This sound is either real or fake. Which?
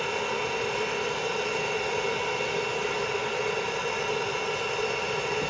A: real